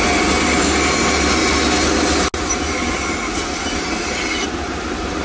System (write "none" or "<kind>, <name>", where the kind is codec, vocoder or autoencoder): none